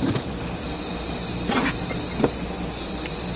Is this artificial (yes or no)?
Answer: no